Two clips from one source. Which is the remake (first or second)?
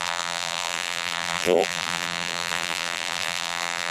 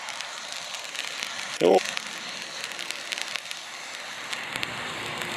first